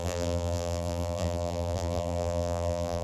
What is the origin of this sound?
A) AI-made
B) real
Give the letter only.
A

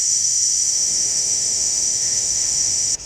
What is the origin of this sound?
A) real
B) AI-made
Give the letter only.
B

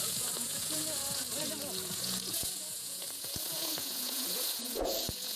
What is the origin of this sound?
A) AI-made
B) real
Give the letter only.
A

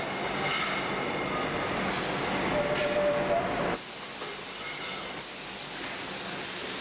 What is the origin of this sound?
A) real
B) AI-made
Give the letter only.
A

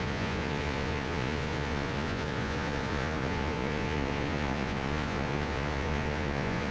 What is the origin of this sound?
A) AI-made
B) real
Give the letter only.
A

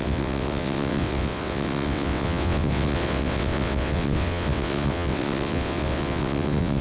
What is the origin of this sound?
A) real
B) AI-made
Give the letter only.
B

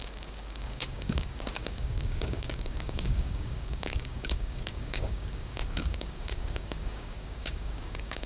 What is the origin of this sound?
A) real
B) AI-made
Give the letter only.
B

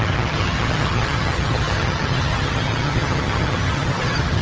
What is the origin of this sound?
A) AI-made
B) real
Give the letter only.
A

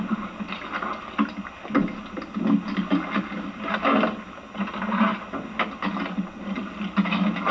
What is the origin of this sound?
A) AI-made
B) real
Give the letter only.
B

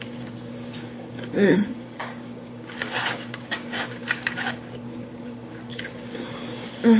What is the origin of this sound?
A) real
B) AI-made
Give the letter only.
B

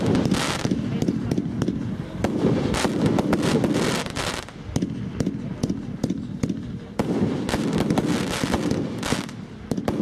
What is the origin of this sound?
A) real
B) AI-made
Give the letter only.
A